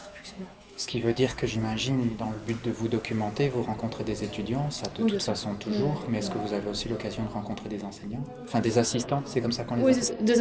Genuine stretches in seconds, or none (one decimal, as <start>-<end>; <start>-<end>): 1.5-8.4; 9.5-10.4